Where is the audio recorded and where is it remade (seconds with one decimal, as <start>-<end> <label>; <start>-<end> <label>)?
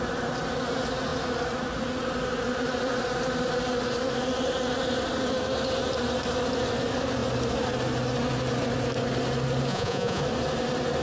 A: 0.0-9.7 recorded; 9.7-10.2 remade; 10.2-11.0 recorded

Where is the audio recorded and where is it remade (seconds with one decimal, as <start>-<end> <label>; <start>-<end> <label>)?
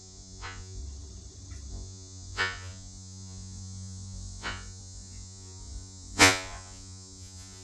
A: 0.0-0.8 remade; 0.8-1.7 recorded; 1.7-7.6 remade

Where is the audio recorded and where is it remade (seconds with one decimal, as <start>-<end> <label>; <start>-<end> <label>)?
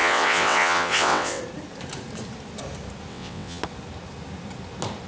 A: 0.0-1.4 remade; 1.4-3.1 recorded; 3.1-3.6 remade; 3.6-5.1 recorded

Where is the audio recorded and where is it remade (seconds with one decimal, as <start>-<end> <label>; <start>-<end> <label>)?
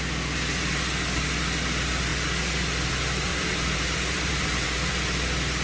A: 0.0-3.3 recorded; 3.3-4.9 remade; 4.9-5.6 recorded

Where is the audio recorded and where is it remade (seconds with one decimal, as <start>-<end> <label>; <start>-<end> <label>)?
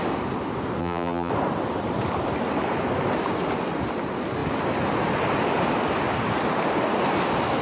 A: 0.0-0.8 recorded; 0.8-1.3 remade; 1.3-7.6 recorded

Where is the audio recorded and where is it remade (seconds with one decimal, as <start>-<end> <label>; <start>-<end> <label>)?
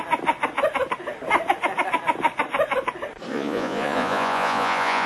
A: 0.0-3.3 recorded; 3.3-5.1 remade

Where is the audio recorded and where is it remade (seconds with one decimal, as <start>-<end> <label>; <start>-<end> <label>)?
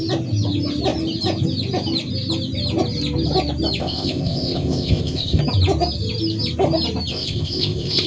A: 0.0-3.8 recorded; 3.8-5.4 remade; 5.4-7.1 recorded; 7.1-8.1 remade